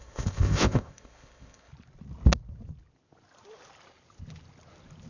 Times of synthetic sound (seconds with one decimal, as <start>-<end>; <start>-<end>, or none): 0.0-1.7